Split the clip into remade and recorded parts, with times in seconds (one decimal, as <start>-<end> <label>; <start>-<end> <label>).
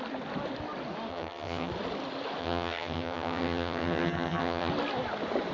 0.0-1.1 recorded; 1.1-1.7 remade; 1.7-2.4 recorded; 2.4-4.7 remade; 4.7-5.5 recorded